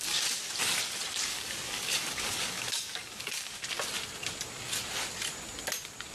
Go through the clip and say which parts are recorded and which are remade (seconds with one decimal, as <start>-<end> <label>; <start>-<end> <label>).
0.0-1.3 recorded; 1.3-3.7 remade; 3.7-6.1 recorded